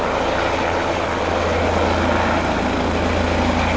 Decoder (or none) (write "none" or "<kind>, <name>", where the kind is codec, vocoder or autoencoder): none